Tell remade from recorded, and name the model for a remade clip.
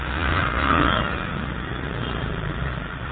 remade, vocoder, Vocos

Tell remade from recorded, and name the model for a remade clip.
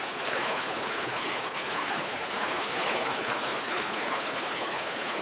remade, codec, HILCodec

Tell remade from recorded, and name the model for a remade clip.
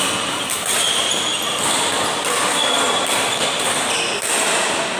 recorded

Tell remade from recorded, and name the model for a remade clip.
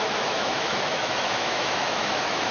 remade, autoencoder, DAC-VAE